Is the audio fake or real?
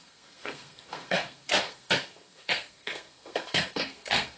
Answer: fake